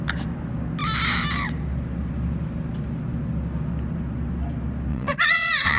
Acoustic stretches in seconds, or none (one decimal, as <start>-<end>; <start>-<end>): 0.0-4.9